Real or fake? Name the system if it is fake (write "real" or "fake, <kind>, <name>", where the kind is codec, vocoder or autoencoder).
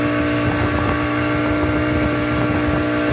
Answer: real